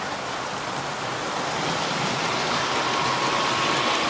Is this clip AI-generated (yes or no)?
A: no